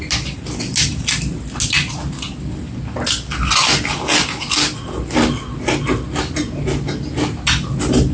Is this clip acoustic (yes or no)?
yes